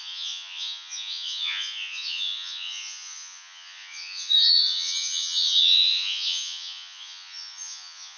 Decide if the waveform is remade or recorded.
remade